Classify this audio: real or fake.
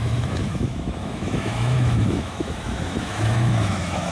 fake